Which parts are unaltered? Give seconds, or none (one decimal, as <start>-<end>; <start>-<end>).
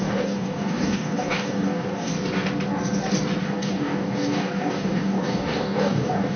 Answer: 2.1-3.4